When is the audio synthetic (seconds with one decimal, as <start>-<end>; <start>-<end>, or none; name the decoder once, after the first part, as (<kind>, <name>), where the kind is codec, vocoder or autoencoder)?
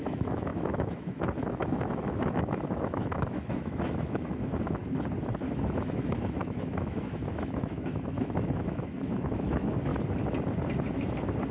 0.0-4.8 (autoencoder, DAC-VAE); 5.5-9.9